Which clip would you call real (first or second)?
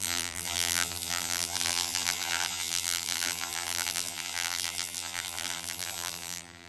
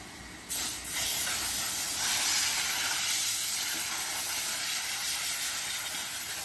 second